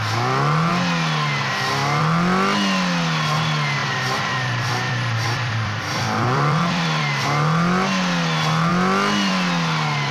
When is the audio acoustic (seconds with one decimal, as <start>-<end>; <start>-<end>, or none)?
0.0-3.8; 7.0-10.1